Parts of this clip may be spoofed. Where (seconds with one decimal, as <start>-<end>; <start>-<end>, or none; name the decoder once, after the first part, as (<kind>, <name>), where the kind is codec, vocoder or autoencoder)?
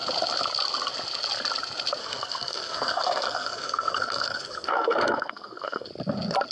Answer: 2.0-5.9 (codec, SNAC)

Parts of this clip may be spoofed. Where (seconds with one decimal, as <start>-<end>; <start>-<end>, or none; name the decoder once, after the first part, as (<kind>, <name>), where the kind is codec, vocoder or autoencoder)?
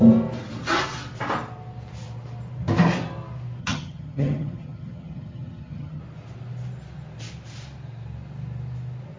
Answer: 3.6-6.0 (vocoder, HiFi-GAN)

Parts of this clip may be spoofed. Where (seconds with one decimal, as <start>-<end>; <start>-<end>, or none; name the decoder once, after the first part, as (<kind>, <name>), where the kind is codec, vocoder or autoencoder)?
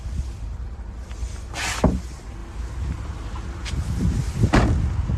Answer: none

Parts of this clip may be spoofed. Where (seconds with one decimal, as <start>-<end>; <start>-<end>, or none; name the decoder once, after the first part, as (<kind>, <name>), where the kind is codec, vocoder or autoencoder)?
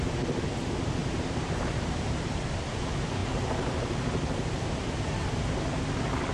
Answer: 1.0-2.8 (vocoder, BigVGAN v2)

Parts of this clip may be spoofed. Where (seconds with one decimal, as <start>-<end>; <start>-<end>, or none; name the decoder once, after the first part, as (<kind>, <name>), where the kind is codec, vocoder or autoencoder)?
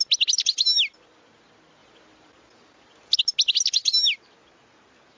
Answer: none